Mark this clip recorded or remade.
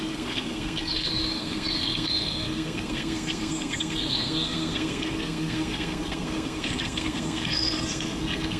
remade